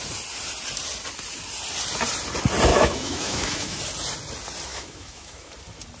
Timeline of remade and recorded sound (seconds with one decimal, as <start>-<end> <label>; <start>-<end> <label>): 0.0-2.7 recorded; 2.7-3.8 remade; 3.8-4.7 recorded; 4.7-5.5 remade; 5.5-6.0 recorded